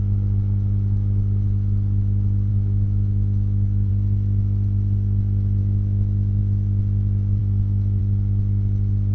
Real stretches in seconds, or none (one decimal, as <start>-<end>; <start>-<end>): 0.0-2.5; 3.9-5.6; 6.4-7.4; 8.0-9.1